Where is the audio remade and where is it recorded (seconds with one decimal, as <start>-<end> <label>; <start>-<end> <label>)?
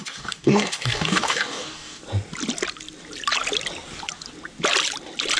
0.0-2.0 remade; 2.0-5.4 recorded